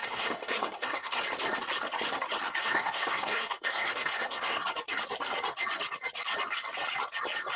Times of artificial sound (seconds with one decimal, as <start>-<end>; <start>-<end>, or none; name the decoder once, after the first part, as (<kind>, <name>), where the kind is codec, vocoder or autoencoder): 0.0-1.2 (codec, SNAC); 2.6-4.6